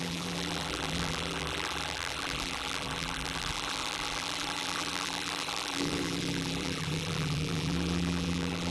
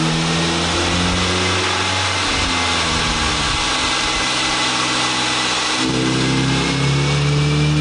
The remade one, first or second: first